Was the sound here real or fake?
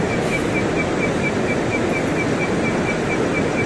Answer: real